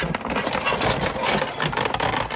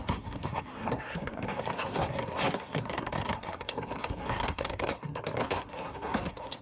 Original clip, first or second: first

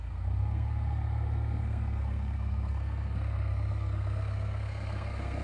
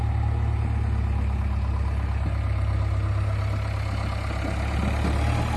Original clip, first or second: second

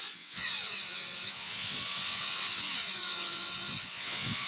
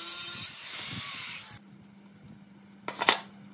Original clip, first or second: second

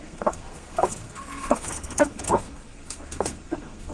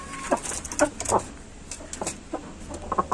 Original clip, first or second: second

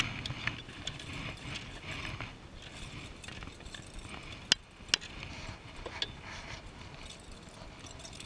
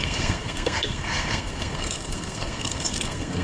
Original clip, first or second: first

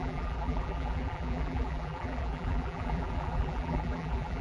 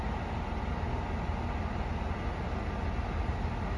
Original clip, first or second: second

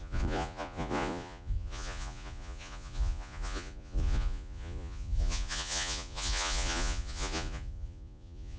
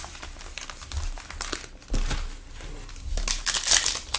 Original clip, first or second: second